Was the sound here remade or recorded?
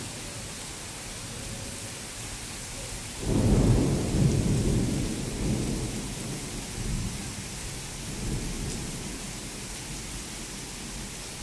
recorded